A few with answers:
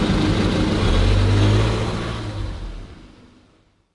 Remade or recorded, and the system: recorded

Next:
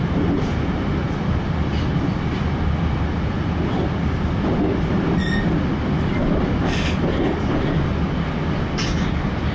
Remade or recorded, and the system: recorded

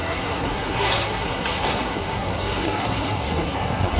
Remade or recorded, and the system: remade, codec, SNAC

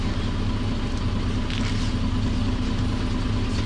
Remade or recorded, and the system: recorded